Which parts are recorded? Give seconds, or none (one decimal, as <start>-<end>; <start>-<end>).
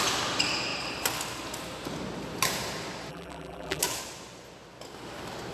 0.0-3.1; 3.8-5.5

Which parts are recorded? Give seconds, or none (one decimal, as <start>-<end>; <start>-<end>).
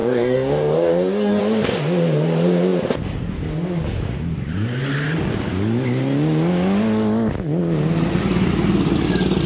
1.4-9.5